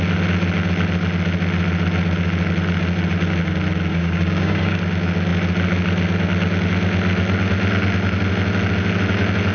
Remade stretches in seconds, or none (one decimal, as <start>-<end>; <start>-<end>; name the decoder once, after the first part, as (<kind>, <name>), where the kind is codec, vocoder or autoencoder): 3.9-4.8 (codec, DAC)

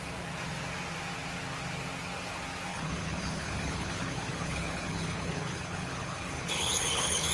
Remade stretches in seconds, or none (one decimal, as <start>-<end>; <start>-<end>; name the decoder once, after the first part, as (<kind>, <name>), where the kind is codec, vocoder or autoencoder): 2.7-7.3 (codec, HILCodec)

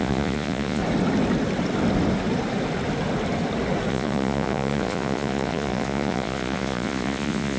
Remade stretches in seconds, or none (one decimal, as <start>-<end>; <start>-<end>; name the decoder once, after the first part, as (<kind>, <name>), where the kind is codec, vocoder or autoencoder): 0.0-0.8 (vocoder, Vocos); 3.9-7.6

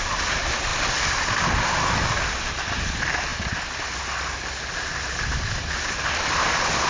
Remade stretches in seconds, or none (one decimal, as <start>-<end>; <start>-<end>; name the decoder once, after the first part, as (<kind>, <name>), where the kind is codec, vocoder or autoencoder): 0.7-1.4 (vocoder, BigVGAN v2)

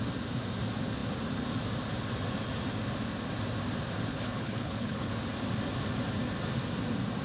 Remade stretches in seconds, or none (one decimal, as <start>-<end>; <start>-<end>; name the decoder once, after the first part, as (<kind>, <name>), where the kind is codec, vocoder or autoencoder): 4.1-5.1 (codec, HILCodec)

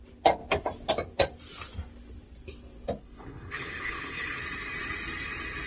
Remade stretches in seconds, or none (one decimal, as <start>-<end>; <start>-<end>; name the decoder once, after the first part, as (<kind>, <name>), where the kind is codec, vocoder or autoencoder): 3.0-4.4 (codec, HILCodec)